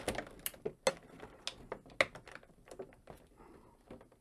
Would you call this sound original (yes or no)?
yes